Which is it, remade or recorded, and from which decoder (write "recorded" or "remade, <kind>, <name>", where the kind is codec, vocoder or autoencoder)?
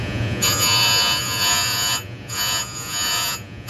remade, vocoder, Vocos